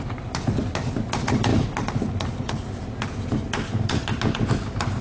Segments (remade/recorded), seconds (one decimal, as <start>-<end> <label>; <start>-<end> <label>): 0.0-5.0 recorded